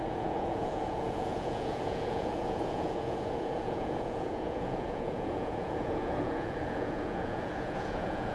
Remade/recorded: remade